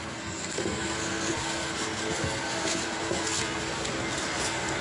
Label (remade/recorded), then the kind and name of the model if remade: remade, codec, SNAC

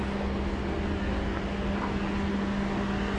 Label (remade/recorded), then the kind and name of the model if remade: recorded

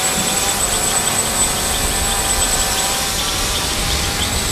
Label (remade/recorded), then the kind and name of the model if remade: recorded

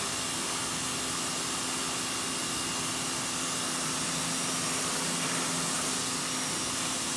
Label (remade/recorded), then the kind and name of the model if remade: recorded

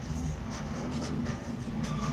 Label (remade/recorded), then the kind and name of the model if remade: remade, codec, SNAC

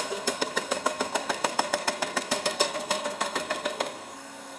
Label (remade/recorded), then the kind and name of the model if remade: remade, codec, SNAC